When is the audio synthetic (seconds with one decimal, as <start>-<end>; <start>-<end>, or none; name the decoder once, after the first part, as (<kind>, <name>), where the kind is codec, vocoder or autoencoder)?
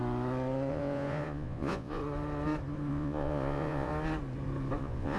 0.7-2.0 (vocoder, Vocos); 2.9-3.9; 4.8-5.2